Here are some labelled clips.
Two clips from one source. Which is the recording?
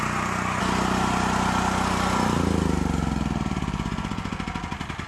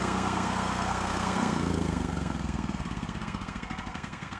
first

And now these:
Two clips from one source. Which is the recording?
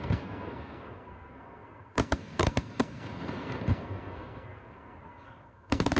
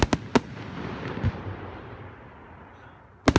second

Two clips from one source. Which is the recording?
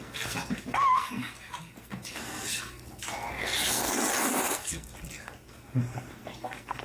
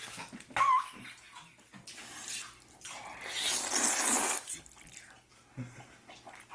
second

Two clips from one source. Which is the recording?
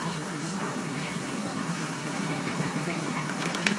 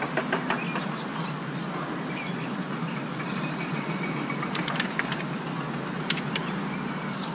second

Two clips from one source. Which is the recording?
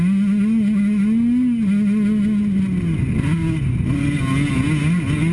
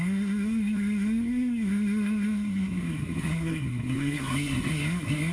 first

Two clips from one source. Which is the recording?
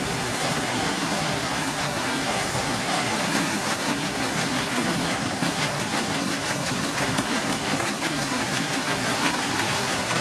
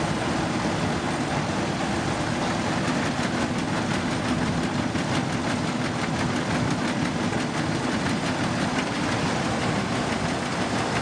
second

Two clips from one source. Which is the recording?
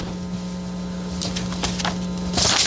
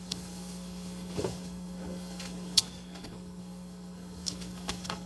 first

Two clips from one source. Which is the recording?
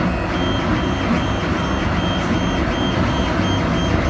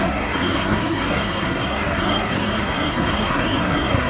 first